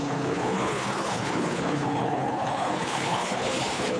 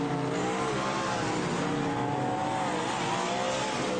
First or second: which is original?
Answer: second